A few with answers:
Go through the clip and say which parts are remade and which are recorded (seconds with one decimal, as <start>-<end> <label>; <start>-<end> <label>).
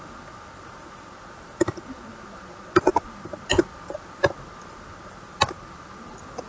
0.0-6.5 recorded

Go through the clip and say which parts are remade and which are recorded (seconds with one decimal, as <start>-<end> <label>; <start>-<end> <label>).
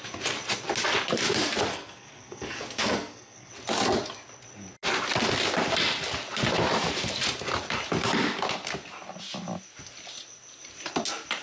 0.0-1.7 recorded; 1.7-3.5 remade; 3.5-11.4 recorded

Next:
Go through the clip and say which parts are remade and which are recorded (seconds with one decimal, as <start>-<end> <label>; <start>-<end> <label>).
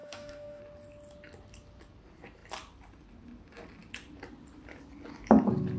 0.0-0.6 remade; 0.6-5.8 recorded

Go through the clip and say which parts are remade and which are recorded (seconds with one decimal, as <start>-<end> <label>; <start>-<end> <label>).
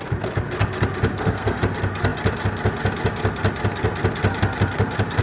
0.0-1.1 recorded; 1.1-1.6 remade; 1.6-5.2 recorded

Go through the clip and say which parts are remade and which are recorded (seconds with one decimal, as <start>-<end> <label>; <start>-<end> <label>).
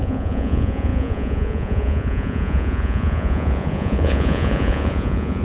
0.0-5.4 remade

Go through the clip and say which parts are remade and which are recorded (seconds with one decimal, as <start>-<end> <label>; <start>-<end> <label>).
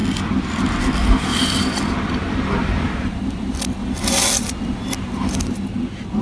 0.0-1.3 recorded; 1.3-5.0 remade; 5.0-6.2 recorded